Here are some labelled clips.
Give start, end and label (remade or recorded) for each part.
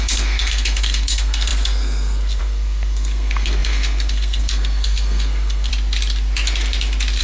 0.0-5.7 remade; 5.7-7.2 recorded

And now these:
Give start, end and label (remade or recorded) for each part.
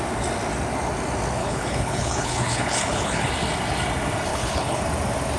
0.0-1.4 recorded; 1.4-3.3 remade; 3.3-4.3 recorded; 4.3-4.8 remade; 4.8-5.4 recorded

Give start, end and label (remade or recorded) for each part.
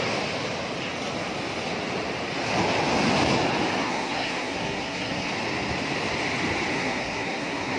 0.0-3.8 recorded; 3.8-5.3 remade; 5.3-6.7 recorded; 6.7-7.8 remade